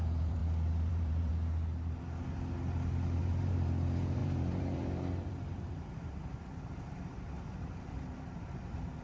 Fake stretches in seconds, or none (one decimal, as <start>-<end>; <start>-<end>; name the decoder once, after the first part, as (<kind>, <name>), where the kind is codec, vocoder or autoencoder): 0.0-0.4 (vocoder, BigVGAN v2); 0.9-1.3; 3.2-9.0